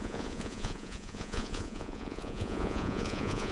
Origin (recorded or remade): remade